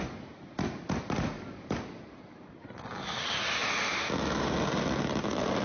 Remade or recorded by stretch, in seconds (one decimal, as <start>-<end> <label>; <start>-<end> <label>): 0.0-5.6 recorded